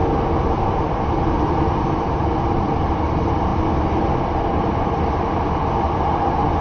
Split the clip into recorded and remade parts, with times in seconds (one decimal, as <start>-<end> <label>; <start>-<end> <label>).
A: 0.0-6.6 recorded